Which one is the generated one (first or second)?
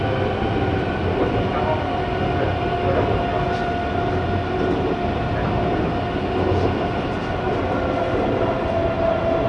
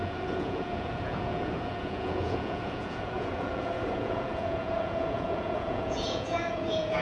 second